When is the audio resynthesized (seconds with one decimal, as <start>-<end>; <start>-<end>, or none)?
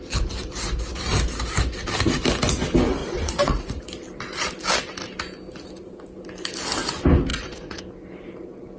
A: 3.0-3.8; 7.3-7.8